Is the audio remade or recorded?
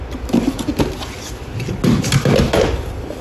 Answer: recorded